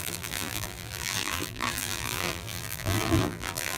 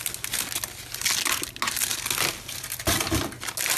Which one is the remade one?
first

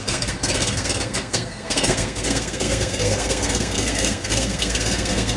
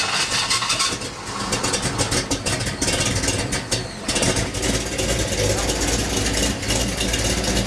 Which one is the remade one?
first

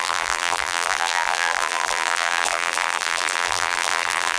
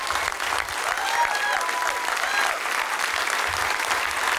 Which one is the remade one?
first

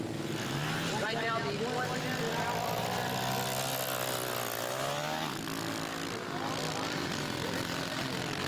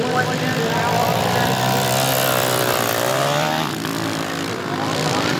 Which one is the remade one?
second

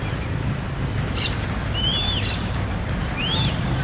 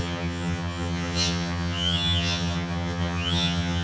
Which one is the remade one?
second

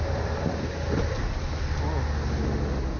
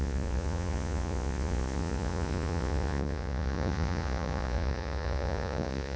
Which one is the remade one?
second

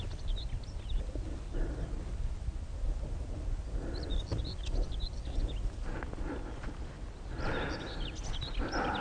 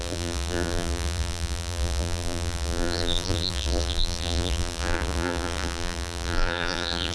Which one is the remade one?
second